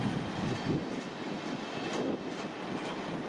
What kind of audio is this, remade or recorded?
recorded